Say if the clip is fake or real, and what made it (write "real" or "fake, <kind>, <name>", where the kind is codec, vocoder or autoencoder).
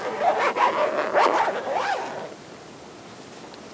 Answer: real